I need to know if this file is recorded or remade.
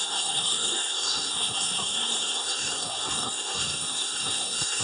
remade